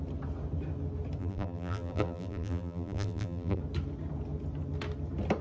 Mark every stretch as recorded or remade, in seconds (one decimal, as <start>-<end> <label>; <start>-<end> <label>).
0.0-1.2 recorded; 1.2-3.6 remade; 3.6-5.4 recorded